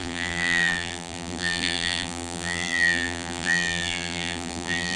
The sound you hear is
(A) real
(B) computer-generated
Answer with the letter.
B